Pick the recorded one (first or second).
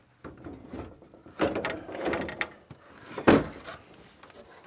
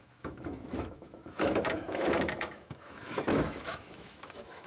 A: first